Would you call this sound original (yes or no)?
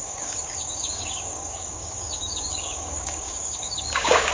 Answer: no